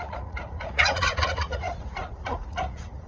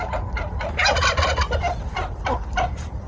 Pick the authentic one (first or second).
second